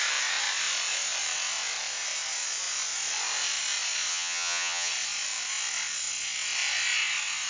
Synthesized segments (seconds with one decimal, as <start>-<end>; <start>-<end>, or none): 4.1-4.9